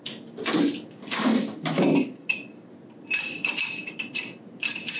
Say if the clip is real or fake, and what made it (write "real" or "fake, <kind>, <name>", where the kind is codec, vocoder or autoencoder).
real